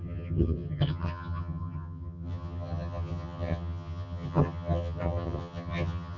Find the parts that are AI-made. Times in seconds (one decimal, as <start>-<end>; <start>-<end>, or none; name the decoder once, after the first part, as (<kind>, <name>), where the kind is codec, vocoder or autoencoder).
0.0-6.2 (vocoder, HiFi-GAN)